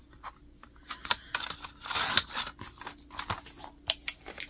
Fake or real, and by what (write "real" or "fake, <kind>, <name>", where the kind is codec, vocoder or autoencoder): real